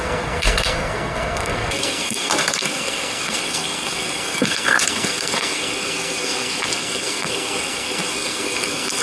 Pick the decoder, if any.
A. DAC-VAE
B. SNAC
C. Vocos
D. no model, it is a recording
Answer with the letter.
B